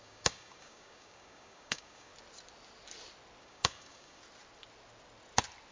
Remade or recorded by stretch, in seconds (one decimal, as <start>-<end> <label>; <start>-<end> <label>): 0.0-2.1 remade; 2.1-3.4 recorded; 3.4-4.2 remade; 4.2-5.7 recorded

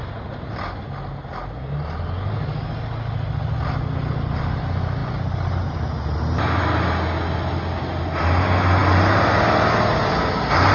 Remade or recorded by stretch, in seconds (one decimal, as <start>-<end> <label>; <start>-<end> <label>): 0.0-10.7 recorded

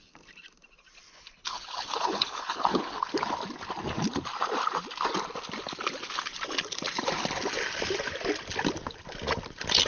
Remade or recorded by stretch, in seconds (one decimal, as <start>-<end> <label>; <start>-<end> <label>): 0.0-1.1 recorded; 1.1-3.1 remade; 3.1-9.9 recorded

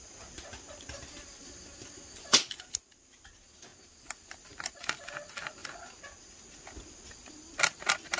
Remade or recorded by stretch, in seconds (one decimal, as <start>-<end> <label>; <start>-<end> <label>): 0.0-8.2 recorded

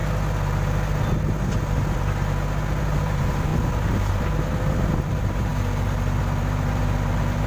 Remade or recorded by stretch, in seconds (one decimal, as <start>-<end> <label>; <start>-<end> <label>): 0.0-2.8 recorded; 2.8-7.5 remade

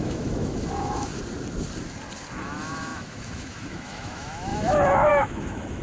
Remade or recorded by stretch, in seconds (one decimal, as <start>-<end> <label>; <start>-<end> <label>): 0.0-1.1 remade; 1.1-2.4 recorded; 2.4-5.8 remade

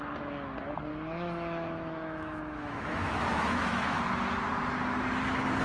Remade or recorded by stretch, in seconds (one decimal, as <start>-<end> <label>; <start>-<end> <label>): 0.0-0.9 recorded; 0.9-4.0 remade; 4.0-5.6 recorded

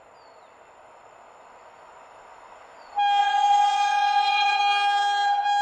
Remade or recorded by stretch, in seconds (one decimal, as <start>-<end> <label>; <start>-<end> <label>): 0.0-3.2 recorded; 3.2-4.6 remade; 4.6-5.6 recorded